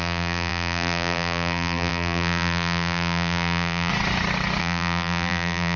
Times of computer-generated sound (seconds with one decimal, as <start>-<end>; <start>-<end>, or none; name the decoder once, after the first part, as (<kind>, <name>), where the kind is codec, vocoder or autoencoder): 0.0-3.9 (vocoder, BigVGAN v2); 4.6-5.8